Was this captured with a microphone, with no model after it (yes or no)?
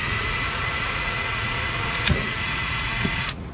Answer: no